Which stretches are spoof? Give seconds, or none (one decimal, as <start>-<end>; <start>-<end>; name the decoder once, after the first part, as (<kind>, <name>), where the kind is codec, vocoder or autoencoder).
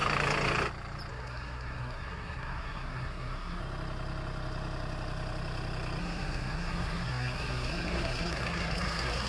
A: 1.1-3.6 (codec, SNAC); 6.0-9.3